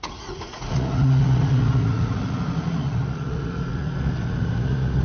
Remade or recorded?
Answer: remade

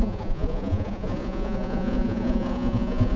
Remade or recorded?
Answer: remade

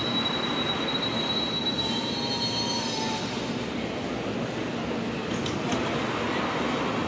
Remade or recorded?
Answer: recorded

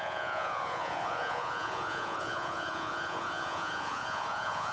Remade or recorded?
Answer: remade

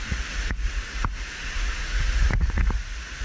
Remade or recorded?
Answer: remade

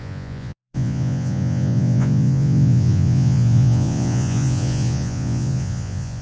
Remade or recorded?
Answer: remade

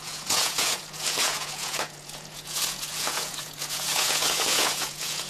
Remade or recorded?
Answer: remade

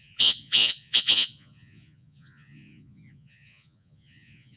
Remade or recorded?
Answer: remade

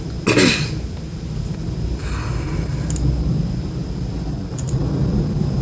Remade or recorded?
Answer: recorded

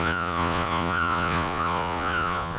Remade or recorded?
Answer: remade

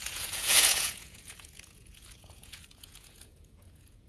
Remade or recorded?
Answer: remade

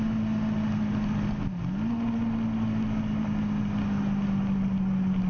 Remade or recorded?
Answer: recorded